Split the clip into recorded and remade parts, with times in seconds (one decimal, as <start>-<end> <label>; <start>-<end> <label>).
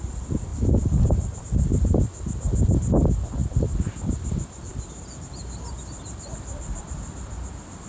0.0-0.5 recorded; 0.5-1.4 remade; 1.4-7.9 recorded